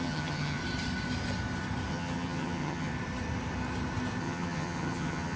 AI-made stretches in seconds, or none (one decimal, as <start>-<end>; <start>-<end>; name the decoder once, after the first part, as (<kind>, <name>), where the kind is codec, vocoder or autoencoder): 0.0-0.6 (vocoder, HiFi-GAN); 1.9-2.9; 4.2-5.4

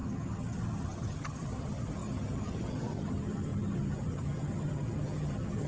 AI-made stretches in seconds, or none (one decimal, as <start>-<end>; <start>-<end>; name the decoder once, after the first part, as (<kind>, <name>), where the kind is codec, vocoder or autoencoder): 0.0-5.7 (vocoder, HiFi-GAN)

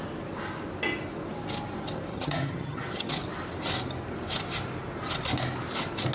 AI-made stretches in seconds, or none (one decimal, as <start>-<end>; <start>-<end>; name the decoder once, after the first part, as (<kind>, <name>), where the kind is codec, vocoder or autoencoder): 2.1-3.1 (vocoder, HiFi-GAN)

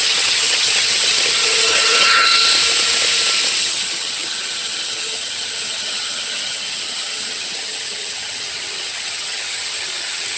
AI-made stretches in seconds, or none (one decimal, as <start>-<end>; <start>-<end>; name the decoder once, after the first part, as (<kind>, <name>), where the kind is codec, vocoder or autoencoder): 0.0-2.4 (vocoder, HiFi-GAN); 3.6-10.4

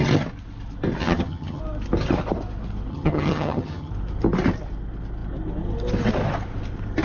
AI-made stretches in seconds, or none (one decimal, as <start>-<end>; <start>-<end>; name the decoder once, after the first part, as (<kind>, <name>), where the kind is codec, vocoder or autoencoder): 1.0-1.6 (vocoder, HiFi-GAN); 2.9-3.9